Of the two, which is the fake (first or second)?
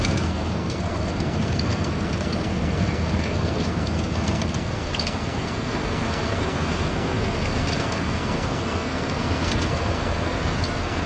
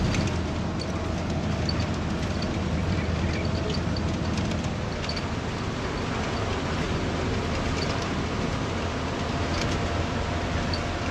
first